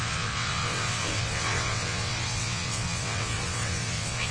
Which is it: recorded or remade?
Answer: remade